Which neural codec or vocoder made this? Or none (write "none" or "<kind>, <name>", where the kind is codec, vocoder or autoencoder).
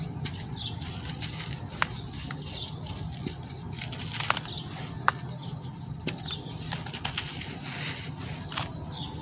none